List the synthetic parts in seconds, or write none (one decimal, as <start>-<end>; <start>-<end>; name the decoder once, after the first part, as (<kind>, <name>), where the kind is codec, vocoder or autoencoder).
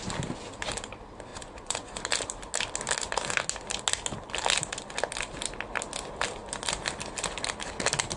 1.3-2.0 (vocoder, Vocos)